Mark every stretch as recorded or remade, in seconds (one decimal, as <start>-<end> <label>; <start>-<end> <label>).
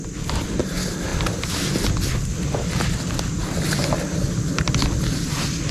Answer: 0.0-5.7 recorded